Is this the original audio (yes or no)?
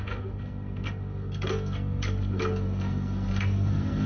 no